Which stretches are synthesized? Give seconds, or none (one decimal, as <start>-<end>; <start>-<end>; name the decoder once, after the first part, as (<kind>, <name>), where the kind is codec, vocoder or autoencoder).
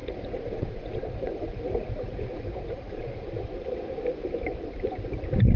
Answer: 0.0-3.4 (vocoder, Vocos)